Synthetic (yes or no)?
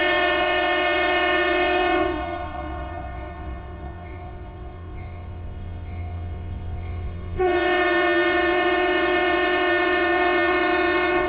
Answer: yes